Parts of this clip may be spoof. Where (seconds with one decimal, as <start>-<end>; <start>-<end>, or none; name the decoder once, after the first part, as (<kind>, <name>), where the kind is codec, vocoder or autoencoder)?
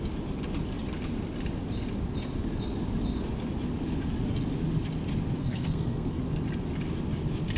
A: 5.4-6.2 (codec, SNAC)